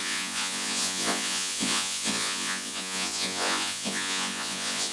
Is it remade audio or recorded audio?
remade